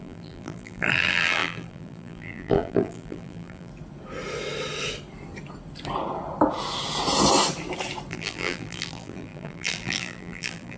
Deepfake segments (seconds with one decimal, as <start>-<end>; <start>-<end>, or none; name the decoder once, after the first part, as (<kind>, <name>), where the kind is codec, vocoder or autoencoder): 0.0-3.7 (vocoder, BigVGAN v2); 8.1-10.8